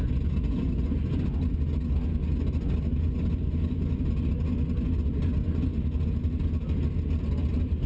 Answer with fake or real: real